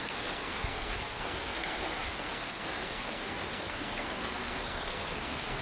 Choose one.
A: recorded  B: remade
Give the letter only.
B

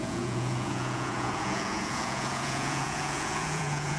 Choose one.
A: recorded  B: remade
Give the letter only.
B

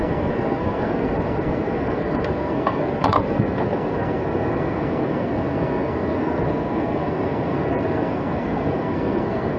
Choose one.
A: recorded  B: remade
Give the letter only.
B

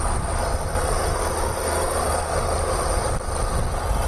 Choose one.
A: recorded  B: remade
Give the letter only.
A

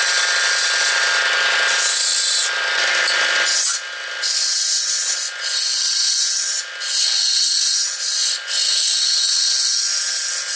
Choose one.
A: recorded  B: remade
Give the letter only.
A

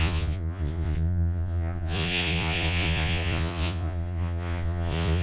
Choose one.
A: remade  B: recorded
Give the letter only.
A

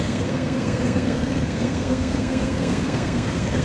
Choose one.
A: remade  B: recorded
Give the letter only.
A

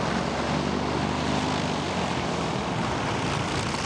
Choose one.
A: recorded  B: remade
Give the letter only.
A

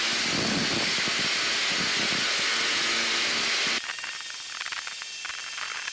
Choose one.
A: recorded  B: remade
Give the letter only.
A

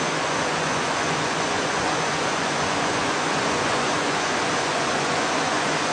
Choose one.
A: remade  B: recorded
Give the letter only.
A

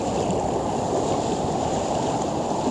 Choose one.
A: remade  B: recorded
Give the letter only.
B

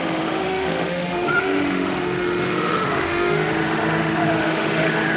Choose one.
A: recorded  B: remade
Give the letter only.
B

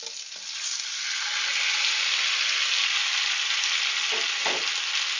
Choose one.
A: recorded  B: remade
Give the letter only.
A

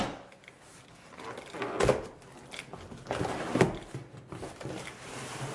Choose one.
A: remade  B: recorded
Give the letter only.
B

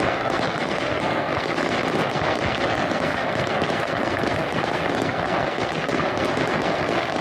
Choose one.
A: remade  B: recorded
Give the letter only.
A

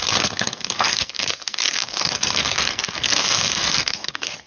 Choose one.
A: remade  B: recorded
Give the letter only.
A